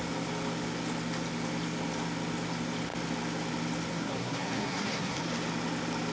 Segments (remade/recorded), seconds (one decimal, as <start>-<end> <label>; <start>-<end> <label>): 0.0-3.9 recorded; 3.9-5.2 remade; 5.2-6.1 recorded